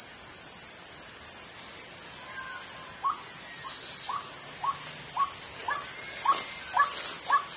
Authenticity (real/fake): real